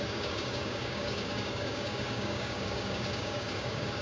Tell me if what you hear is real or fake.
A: fake